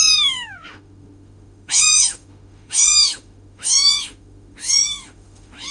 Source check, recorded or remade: remade